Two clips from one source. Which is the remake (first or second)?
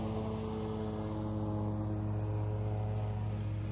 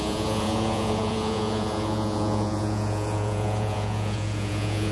second